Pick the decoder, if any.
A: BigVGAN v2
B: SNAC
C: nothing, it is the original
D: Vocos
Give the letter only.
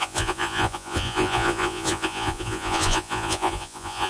D